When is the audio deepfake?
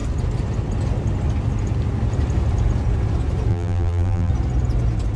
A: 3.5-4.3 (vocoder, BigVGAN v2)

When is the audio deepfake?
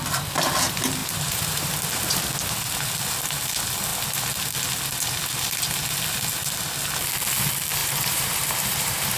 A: 1.0-1.7 (vocoder, BigVGAN v2); 7.8-9.2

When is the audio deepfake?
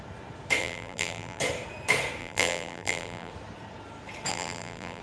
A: 0.6-1.4 (vocoder, BigVGAN v2); 2.2-3.3; 4.3-5.0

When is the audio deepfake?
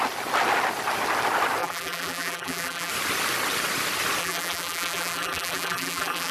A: 1.6-2.9 (vocoder, BigVGAN v2); 4.2-6.3